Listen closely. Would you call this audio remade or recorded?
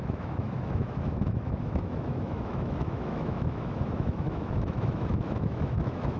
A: remade